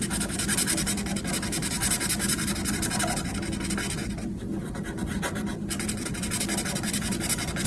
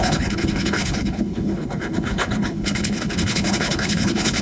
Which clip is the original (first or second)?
first